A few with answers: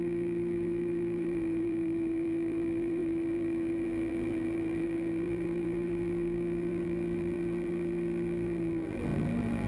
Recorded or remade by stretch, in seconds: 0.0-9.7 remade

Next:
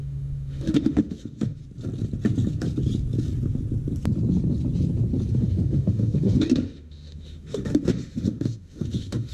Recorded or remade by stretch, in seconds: 0.0-1.6 remade; 1.6-5.3 recorded; 5.3-9.3 remade

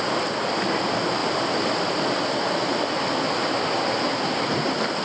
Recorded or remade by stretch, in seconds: 0.0-5.0 recorded

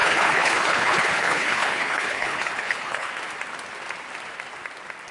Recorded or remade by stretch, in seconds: 0.0-3.1 remade; 3.1-5.1 recorded

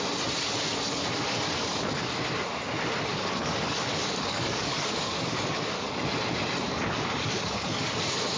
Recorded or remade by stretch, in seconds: 0.0-3.1 recorded; 3.1-5.9 remade; 5.9-6.7 recorded; 6.7-8.0 remade; 8.0-8.4 recorded

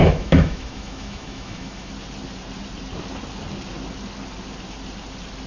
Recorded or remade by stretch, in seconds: 0.0-1.9 remade; 1.9-5.5 recorded

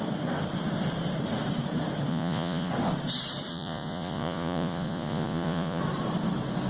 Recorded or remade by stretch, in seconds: 0.0-2.1 recorded; 2.1-2.7 remade; 2.7-3.5 recorded; 3.5-5.8 remade; 5.8-6.7 recorded